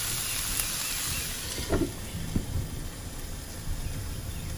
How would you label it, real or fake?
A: real